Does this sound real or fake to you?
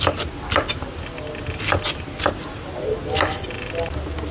real